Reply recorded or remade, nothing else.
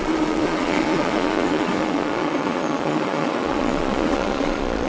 remade